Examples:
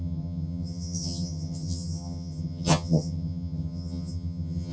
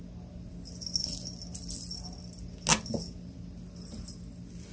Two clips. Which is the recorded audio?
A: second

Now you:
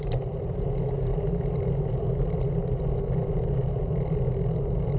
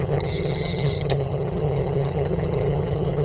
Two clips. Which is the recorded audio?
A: first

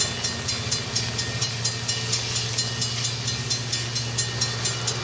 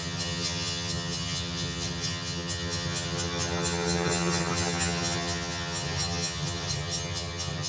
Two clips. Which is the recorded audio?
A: first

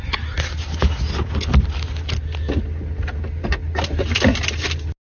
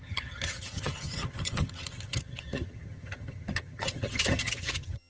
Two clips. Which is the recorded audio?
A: first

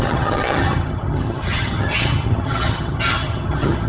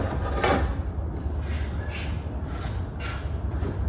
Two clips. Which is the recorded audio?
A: second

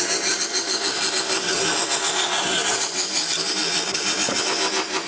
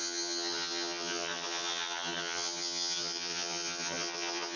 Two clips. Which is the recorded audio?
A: first